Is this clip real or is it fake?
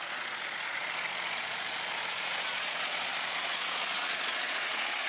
fake